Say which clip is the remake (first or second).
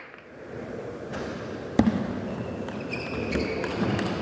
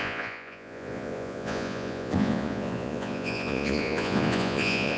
second